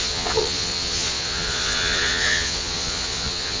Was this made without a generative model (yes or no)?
no